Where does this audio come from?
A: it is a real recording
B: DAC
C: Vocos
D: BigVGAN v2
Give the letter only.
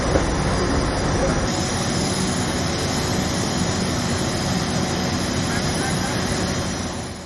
D